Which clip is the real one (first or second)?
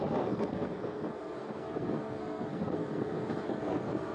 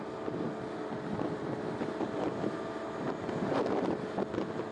second